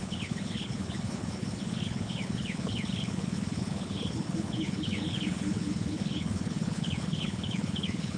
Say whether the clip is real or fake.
fake